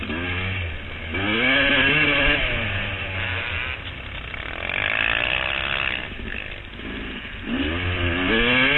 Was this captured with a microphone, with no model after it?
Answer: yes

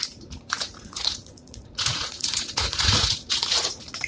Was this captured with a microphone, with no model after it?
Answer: no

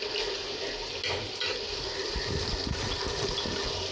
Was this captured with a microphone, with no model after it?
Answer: yes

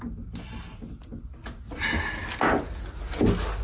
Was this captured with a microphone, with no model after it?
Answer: yes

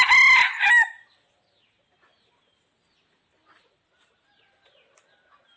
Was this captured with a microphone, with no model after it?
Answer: yes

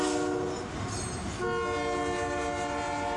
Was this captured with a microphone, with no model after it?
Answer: yes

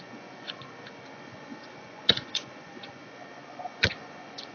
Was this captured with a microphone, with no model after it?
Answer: no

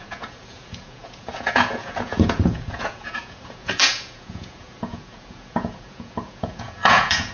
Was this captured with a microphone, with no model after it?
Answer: no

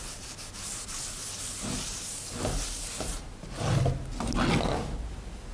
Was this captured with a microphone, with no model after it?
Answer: yes